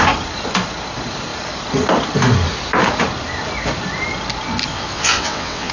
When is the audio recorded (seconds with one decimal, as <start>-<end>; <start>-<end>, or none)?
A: 0.0-4.7